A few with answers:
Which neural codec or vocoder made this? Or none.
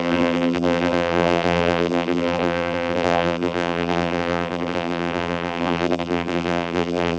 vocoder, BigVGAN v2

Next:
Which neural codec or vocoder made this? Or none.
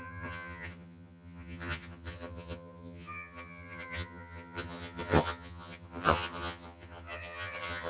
vocoder, HiFi-GAN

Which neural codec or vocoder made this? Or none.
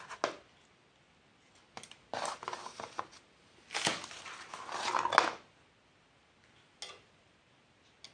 none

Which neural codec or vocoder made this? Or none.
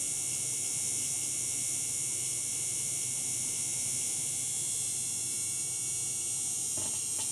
none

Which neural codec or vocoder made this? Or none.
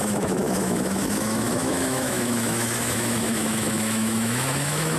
autoencoder, DAC-VAE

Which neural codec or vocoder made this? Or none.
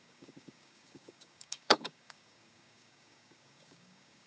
codec, DAC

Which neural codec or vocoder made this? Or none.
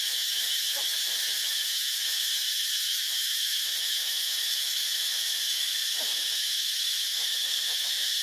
autoencoder, DAC-VAE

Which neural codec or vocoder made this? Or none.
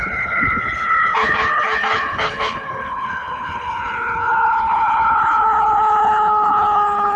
codec, HILCodec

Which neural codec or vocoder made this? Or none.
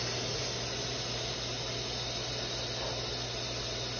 none